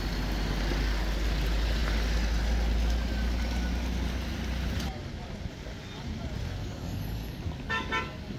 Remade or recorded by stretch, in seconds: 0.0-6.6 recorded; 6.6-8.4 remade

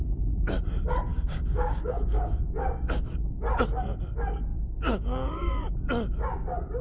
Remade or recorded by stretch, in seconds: 0.0-1.1 recorded; 1.1-3.4 remade; 3.4-4.5 recorded; 4.5-5.7 remade; 5.7-6.8 recorded

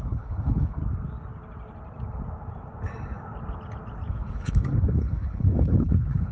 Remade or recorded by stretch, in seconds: 0.0-0.8 remade; 0.8-4.1 recorded; 4.1-6.3 remade

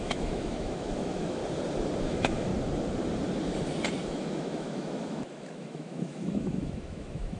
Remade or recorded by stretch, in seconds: 0.0-1.4 remade; 1.4-2.0 recorded; 2.0-2.5 remade; 2.5-4.0 recorded; 4.0-7.4 remade

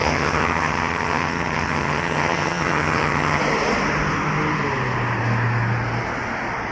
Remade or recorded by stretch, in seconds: 0.0-3.4 remade; 3.4-6.7 recorded